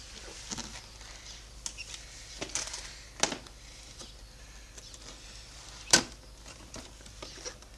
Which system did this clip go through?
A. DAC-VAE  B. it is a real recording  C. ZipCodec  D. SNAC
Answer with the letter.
B